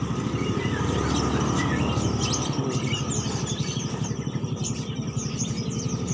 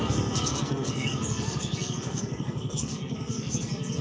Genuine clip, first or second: first